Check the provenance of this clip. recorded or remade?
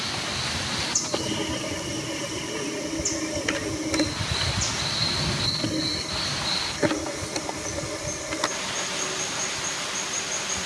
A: recorded